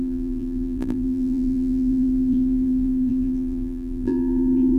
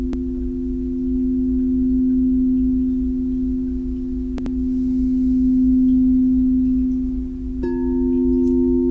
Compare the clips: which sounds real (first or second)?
second